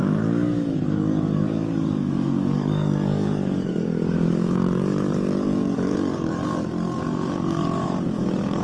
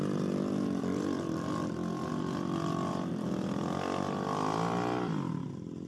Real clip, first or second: second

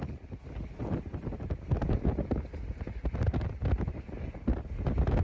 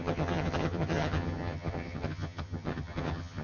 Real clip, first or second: first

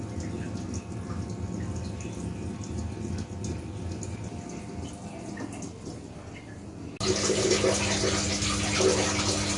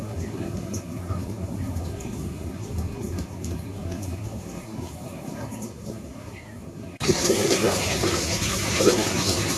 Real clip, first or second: first